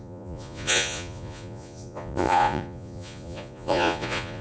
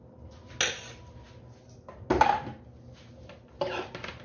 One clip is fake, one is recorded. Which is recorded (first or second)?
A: second